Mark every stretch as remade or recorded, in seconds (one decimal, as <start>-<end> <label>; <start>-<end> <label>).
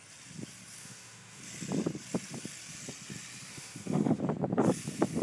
0.0-0.8 recorded; 0.8-1.4 remade; 1.4-3.5 recorded; 3.5-4.2 remade; 4.2-5.2 recorded